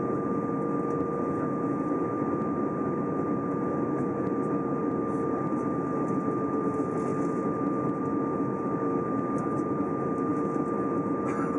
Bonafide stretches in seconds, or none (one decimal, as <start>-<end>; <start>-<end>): 0.0-11.6